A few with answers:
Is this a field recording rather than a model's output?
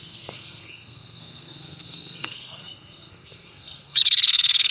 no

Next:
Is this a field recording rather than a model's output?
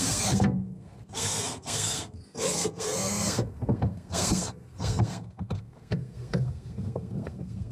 no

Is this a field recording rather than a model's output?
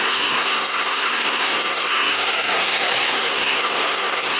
no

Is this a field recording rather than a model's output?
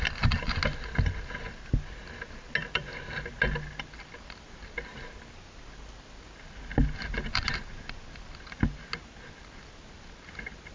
yes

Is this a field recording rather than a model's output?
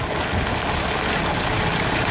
yes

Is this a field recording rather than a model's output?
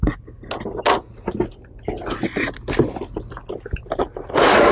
yes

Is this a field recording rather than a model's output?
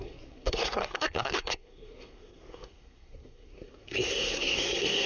no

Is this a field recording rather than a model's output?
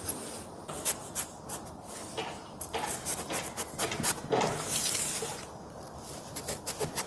yes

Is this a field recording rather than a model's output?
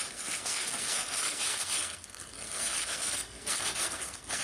no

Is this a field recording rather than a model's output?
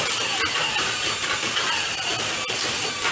yes